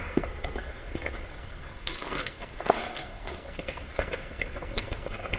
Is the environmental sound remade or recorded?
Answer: remade